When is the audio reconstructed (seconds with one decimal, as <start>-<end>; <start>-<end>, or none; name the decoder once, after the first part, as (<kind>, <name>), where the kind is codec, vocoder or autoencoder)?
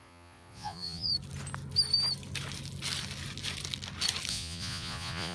0.0-1.1 (vocoder, Vocos); 4.3-5.3